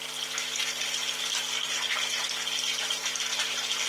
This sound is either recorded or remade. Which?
recorded